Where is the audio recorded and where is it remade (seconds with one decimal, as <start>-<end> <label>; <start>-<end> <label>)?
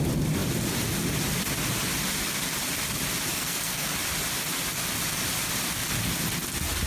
0.0-3.3 recorded; 3.3-3.9 remade; 3.9-6.9 recorded